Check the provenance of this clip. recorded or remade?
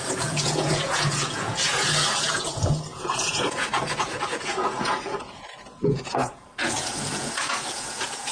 remade